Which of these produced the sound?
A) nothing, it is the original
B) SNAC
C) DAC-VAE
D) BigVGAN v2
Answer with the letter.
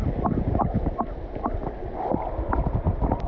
A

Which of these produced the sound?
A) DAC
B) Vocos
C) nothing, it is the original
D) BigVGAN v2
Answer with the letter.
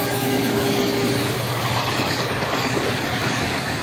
A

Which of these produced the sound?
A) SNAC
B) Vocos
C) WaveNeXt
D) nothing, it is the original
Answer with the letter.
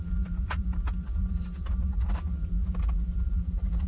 D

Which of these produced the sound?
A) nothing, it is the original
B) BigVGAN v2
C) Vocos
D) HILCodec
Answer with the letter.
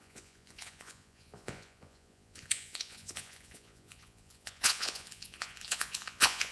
C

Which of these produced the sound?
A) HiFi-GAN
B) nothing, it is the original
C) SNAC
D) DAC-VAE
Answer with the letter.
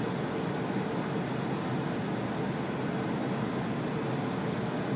B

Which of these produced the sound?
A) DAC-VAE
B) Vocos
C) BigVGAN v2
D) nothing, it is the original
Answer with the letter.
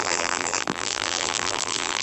C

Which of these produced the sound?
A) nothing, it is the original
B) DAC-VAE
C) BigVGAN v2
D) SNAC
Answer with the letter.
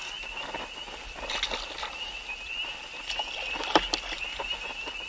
A